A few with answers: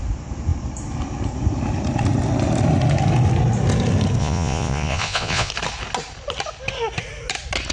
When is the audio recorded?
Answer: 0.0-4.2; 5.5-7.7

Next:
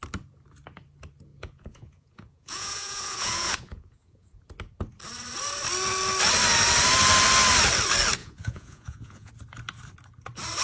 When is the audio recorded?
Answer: 0.0-1.3; 4.4-8.2; 9.3-10.6

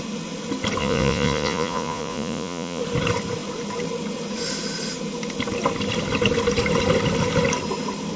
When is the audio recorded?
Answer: 0.0-0.8; 2.8-8.2

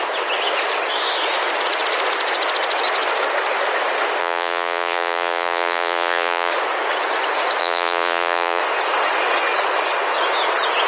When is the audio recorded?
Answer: 0.0-4.2; 6.5-7.6; 8.6-10.9

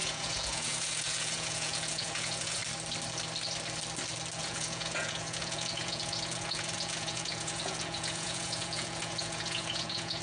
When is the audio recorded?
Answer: 2.6-4.4

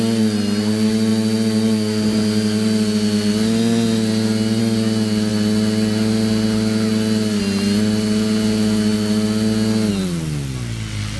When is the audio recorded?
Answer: 0.0-11.2

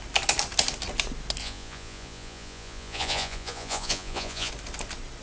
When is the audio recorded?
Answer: 0.0-1.4; 4.5-5.2